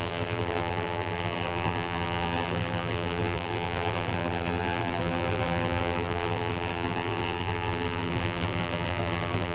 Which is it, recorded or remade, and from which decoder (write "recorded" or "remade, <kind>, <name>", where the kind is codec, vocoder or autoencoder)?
remade, vocoder, BigVGAN v2